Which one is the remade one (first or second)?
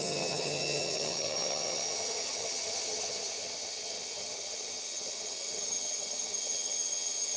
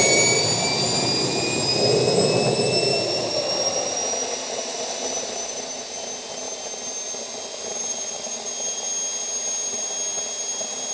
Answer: first